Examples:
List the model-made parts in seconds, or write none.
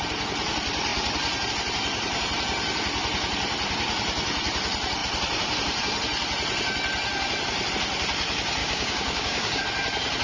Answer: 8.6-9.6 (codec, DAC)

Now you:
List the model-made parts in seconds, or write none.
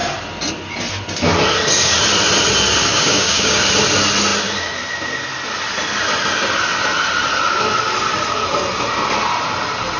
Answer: 2.9-3.6 (codec, DAC)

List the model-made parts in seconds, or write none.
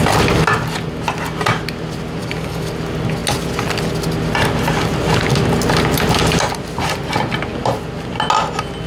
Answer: 2.2-2.7 (codec, DAC)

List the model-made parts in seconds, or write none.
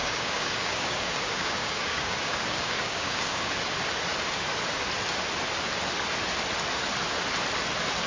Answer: 0.0-3.5 (codec, DAC)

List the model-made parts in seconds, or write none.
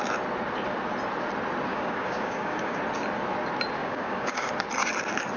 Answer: 1.7-2.8 (codec, DAC); 3.8-4.5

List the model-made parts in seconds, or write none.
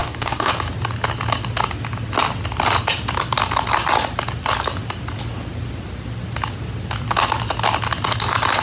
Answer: 0.0-0.5 (codec, DAC)